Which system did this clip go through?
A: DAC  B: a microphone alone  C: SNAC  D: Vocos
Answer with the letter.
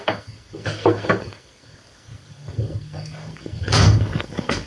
C